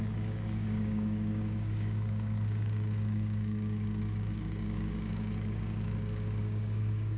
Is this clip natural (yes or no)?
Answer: no